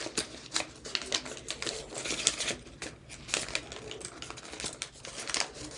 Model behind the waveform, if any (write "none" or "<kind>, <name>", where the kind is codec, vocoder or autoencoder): none